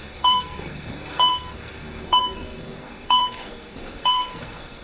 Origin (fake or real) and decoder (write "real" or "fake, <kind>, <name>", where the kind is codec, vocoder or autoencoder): fake, codec, SNAC